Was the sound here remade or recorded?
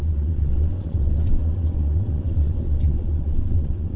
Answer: remade